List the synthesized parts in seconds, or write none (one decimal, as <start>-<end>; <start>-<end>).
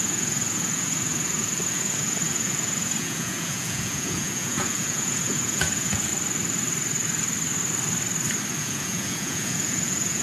0.0-6.1; 8.6-10.2